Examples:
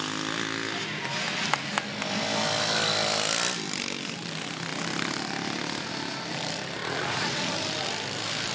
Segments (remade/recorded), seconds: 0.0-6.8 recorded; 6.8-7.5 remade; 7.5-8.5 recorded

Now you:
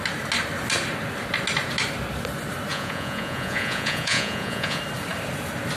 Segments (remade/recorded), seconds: 0.0-2.7 recorded; 2.7-4.8 remade; 4.8-5.8 recorded

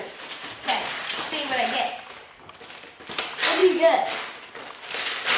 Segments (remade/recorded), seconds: 0.0-0.4 recorded; 0.4-1.1 remade; 1.1-5.4 recorded

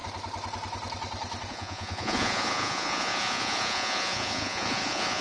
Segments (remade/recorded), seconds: 0.0-1.5 recorded; 1.5-5.2 remade

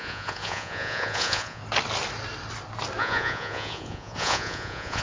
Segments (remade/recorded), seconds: 0.0-1.6 remade; 1.6-3.0 recorded; 3.0-5.0 remade